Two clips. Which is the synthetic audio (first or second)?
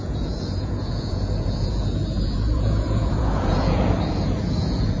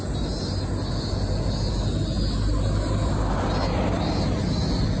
first